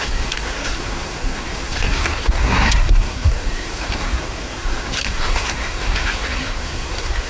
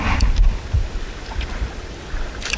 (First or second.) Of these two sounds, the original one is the second